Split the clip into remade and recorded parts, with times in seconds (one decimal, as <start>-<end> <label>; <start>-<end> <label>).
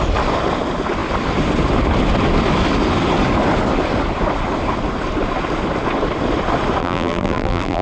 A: 0.0-6.8 recorded; 6.8-7.8 remade